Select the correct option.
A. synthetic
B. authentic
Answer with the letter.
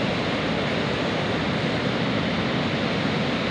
B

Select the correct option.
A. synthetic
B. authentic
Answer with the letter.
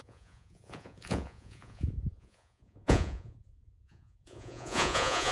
A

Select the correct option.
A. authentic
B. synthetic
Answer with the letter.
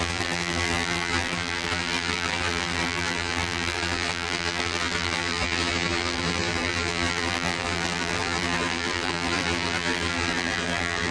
B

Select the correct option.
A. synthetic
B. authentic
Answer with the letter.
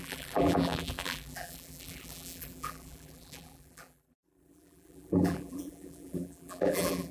A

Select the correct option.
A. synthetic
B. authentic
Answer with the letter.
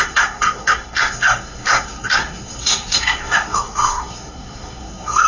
A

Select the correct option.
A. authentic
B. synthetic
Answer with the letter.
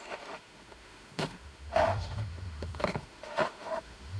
B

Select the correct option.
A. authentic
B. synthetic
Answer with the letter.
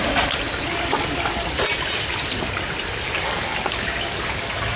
A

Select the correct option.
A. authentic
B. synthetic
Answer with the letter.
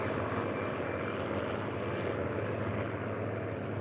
A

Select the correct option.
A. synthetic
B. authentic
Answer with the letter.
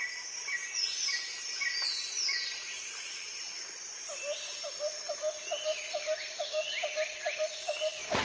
B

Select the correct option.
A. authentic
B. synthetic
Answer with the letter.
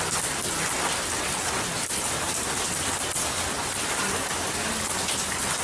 A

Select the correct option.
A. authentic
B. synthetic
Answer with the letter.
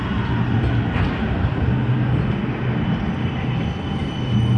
A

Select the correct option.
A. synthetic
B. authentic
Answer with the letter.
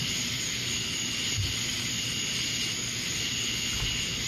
B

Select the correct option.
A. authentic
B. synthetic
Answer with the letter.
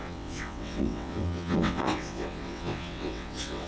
B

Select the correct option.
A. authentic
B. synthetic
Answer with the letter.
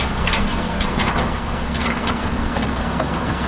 B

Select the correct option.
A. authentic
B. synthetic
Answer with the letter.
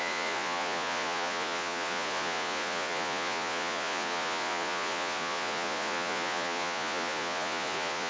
B